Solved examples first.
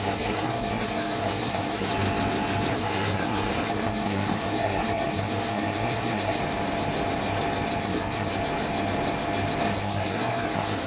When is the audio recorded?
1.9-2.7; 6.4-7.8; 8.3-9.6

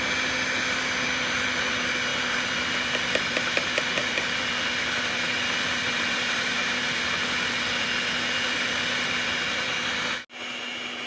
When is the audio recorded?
0.0-11.1

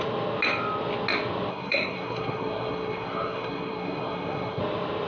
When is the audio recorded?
0.0-1.5; 4.6-5.1

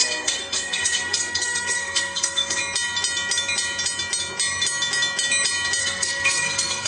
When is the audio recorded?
2.6-5.8